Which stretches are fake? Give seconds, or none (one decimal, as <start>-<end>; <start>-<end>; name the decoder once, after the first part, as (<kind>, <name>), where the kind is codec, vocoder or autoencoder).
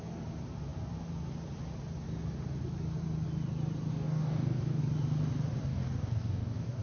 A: 3.9-4.8 (codec, DAC); 5.7-6.8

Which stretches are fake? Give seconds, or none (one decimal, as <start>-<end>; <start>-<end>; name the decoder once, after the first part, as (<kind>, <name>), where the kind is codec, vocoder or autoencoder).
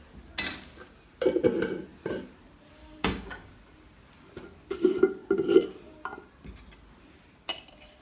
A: 2.8-3.5 (codec, DAC)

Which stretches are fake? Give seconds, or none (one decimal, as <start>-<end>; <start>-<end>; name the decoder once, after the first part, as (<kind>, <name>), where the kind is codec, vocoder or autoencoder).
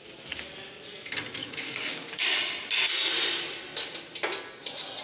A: 1.4-2.4 (codec, DAC)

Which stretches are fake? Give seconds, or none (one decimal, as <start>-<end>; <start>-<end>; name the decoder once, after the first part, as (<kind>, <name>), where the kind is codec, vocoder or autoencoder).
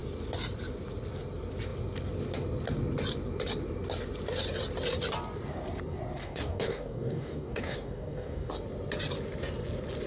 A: 6.2-8.5 (codec, DAC)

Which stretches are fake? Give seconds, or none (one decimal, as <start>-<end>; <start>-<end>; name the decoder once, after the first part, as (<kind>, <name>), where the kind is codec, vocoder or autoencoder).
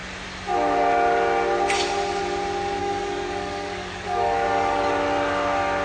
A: 2.8-4.9 (codec, DAC)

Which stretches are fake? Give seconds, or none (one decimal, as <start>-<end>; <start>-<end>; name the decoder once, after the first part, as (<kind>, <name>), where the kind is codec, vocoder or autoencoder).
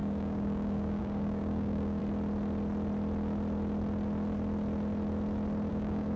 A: 0.0-2.0 (codec, DAC); 5.7-6.2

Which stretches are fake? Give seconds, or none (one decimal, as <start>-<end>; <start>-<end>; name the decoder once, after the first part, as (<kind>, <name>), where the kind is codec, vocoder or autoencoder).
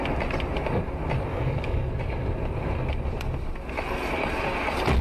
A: 1.3-1.9 (codec, DAC)